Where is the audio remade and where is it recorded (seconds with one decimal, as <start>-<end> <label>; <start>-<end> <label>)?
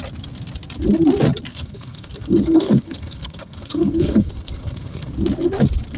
0.0-1.5 recorded; 1.5-5.1 remade; 5.1-6.0 recorded